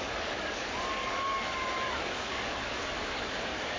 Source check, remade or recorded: remade